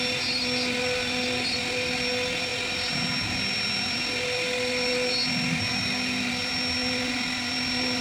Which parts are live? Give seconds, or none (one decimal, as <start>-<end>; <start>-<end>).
0.0-8.0

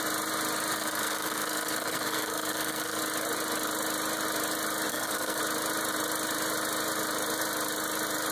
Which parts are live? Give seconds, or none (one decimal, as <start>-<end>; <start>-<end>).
0.0-0.7; 3.0-4.9; 5.4-8.3